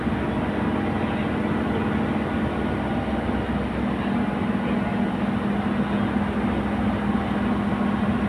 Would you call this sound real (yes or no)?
yes